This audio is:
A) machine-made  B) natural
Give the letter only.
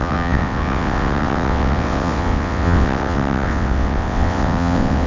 A